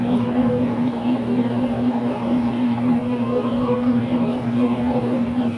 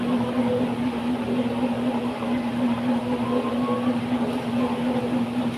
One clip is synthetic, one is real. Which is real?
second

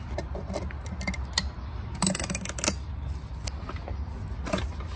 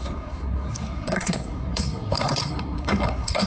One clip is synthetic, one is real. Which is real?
first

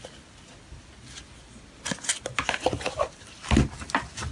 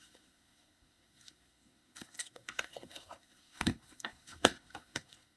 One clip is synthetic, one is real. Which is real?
first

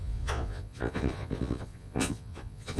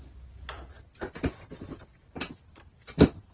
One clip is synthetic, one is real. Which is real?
second